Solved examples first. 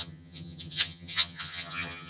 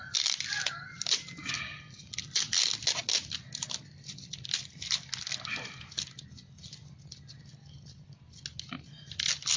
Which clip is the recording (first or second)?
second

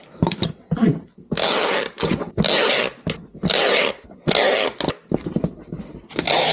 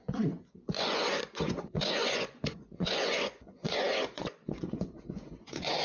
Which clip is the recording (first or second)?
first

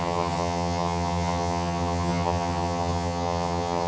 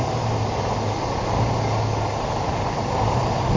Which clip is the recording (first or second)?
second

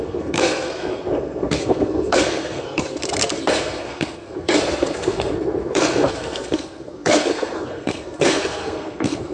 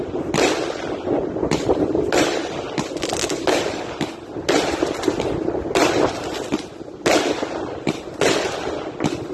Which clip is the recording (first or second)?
second